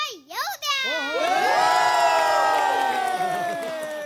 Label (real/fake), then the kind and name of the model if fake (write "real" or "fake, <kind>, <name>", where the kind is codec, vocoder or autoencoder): real